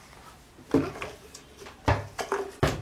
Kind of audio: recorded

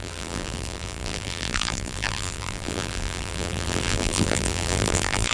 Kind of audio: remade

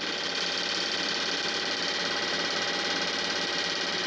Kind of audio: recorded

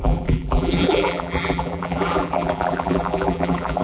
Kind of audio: remade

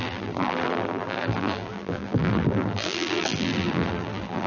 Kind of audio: remade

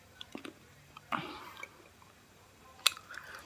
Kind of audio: remade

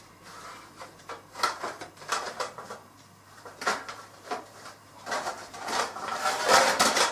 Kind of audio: remade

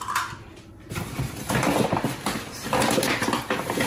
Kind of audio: remade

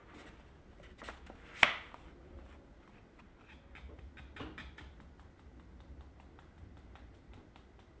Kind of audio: recorded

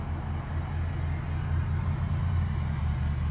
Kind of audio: recorded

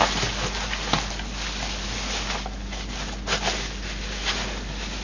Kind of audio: recorded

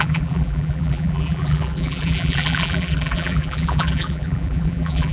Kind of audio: remade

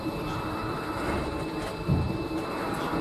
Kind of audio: remade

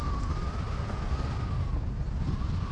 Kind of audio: recorded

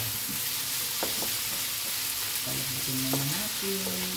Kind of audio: recorded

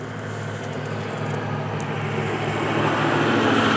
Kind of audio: recorded